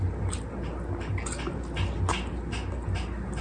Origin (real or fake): real